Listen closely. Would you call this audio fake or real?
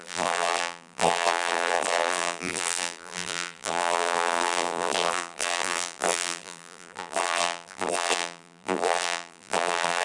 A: fake